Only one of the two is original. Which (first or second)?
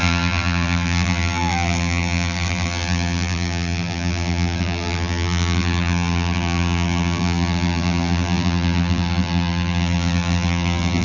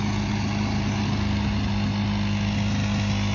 second